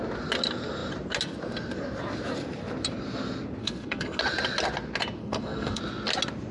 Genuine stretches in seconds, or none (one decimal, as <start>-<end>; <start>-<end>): 0.0-3.6; 4.2-5.2; 5.8-6.5